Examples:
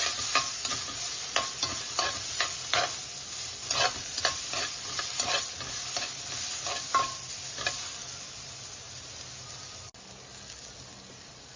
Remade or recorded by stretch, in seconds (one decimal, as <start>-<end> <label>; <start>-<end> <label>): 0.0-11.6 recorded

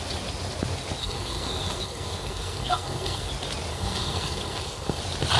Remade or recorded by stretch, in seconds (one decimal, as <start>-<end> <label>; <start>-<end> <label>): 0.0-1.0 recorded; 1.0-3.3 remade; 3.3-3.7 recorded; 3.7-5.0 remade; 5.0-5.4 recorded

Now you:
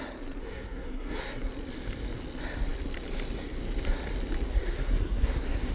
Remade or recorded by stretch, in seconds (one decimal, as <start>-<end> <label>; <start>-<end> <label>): 0.0-0.4 recorded; 0.4-1.5 remade; 1.5-4.5 recorded; 4.5-5.7 remade

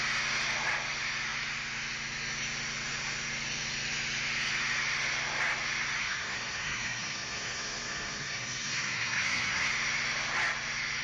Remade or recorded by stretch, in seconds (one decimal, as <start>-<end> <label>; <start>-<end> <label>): 0.0-6.0 recorded; 6.0-9.7 remade; 9.7-11.0 recorded

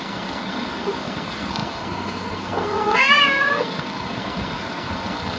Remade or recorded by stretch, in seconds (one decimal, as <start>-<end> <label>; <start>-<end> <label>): 0.0-5.4 remade